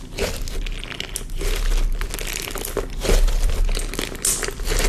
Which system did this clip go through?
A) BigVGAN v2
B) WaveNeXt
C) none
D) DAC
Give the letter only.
C